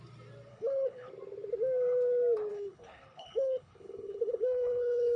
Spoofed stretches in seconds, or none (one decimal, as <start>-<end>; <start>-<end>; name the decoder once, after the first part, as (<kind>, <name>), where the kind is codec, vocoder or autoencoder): 0.5-1.1 (codec, HILCodec); 2.5-5.2